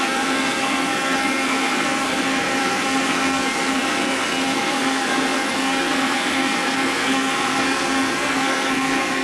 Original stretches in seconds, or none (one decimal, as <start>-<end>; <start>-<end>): none